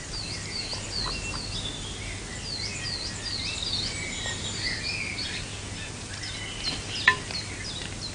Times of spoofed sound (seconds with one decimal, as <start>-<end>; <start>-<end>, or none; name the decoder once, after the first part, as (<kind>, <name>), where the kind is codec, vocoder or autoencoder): none